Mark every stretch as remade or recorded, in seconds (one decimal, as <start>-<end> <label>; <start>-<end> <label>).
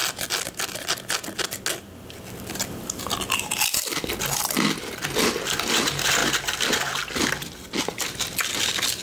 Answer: 0.0-9.0 recorded